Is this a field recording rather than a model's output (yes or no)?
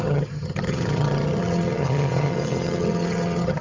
no